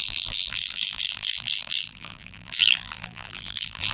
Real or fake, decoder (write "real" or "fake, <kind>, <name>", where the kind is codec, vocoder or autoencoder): fake, vocoder, BigVGAN v2